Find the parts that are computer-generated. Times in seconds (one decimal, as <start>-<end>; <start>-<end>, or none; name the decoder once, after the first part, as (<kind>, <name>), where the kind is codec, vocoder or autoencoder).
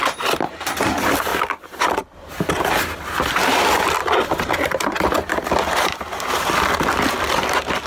none